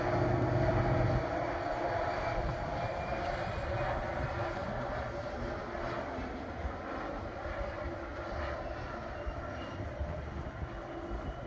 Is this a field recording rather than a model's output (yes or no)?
yes